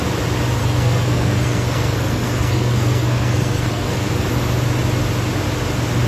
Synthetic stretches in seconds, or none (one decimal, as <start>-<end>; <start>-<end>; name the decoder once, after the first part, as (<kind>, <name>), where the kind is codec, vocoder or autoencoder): 0.6-4.3 (codec, SNAC)